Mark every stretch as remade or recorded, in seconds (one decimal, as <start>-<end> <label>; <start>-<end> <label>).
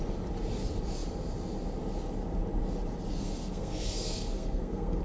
0.0-3.1 recorded; 3.1-5.0 remade